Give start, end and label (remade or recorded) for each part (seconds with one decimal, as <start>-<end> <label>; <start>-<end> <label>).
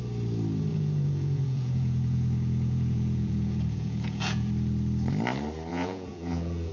0.0-0.7 recorded; 0.7-4.5 remade; 4.5-5.7 recorded; 5.7-6.7 remade